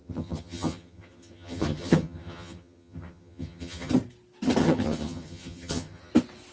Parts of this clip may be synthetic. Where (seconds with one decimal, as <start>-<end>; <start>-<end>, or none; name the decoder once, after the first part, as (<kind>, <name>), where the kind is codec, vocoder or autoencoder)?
0.0-3.9 (vocoder, HiFi-GAN); 4.6-6.1